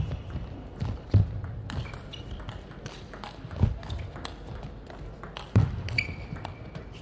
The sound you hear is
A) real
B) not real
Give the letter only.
A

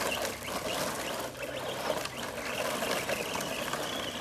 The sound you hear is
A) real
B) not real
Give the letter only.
A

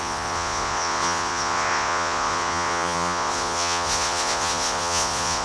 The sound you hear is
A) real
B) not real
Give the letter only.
B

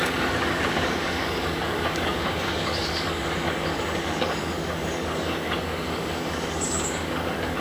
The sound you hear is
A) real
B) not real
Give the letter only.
B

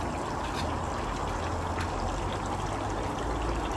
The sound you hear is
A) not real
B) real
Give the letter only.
B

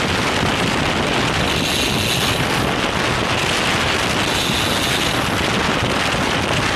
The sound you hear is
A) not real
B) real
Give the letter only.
B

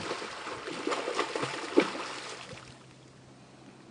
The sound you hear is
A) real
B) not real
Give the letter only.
A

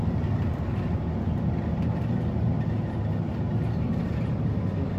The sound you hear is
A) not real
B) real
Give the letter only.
B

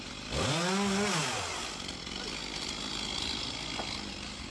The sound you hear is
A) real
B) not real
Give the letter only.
A